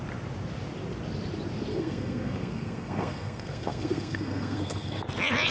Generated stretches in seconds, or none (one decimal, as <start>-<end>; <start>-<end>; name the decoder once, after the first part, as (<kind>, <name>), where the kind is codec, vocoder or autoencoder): 1.7-5.0 (codec, SNAC)